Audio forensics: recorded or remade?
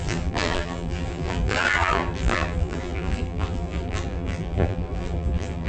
remade